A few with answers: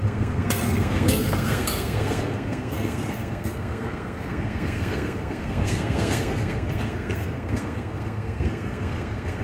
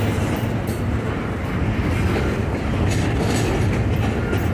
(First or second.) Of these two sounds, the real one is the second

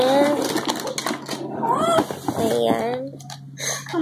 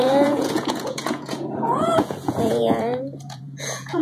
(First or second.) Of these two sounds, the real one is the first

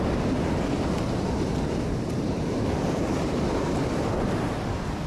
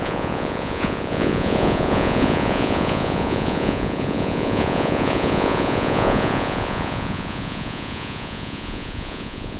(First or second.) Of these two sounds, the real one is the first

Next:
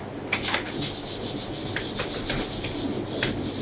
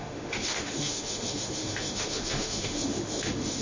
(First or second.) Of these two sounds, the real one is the first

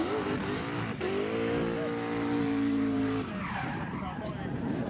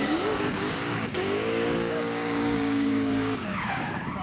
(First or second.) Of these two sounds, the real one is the first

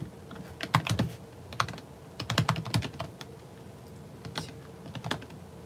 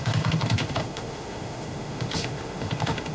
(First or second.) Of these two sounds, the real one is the first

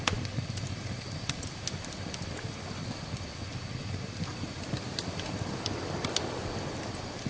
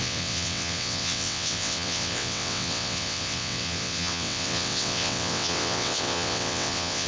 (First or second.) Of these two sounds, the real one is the first